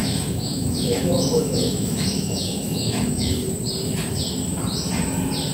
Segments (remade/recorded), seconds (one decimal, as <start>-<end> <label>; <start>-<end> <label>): 0.0-3.3 remade; 3.3-5.5 recorded